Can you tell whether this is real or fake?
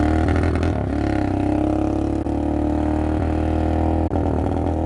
real